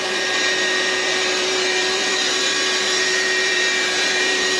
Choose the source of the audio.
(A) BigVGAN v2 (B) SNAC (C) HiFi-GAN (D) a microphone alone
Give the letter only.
A